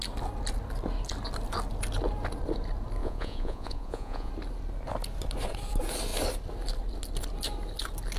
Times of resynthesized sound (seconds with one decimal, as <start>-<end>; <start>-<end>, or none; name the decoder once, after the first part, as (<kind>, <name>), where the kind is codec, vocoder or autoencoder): 3.0-4.3 (vocoder, Vocos)